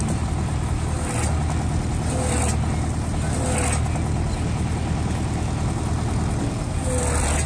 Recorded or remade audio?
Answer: recorded